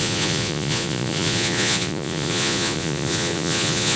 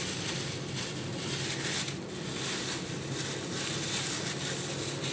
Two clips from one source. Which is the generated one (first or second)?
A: first